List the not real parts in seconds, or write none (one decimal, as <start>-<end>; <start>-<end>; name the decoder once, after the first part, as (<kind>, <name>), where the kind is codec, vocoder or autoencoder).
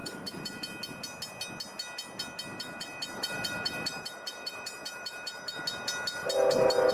0.0-0.6 (vocoder, BigVGAN v2); 2.5-5.6; 6.2-6.9